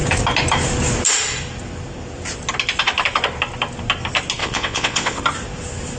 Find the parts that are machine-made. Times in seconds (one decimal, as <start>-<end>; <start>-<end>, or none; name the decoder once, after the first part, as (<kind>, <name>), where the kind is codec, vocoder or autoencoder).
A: 4.4-5.2 (vocoder, WaveNeXt)